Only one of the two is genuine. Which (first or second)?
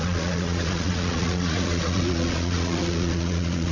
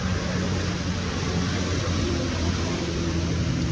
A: second